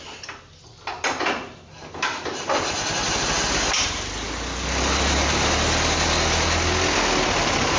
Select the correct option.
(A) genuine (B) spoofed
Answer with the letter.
A